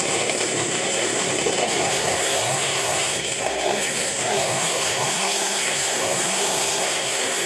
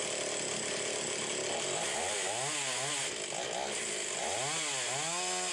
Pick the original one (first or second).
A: second